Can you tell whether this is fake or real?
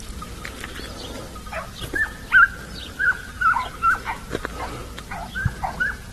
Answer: real